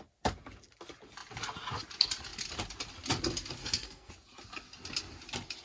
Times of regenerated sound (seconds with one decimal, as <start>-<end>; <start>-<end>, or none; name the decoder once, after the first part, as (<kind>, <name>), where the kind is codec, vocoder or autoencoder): 3.6-4.1 (codec, SNAC)